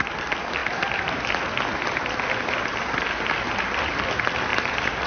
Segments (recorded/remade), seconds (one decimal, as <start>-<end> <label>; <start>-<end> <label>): 0.0-5.1 recorded